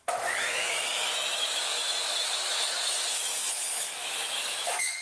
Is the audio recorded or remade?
remade